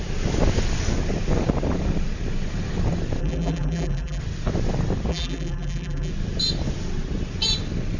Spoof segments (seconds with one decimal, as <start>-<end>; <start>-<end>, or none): 3.2-4.2; 5.1-6.1